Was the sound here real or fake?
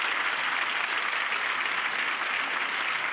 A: real